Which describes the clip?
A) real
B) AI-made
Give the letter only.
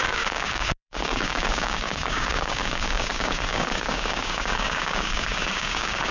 B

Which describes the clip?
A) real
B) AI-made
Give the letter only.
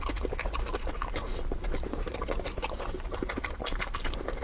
A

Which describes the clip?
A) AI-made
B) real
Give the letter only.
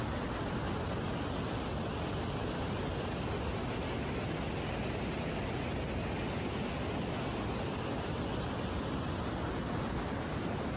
B